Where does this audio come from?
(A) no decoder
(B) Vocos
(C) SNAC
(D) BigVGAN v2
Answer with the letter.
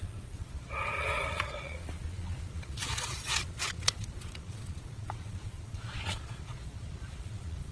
B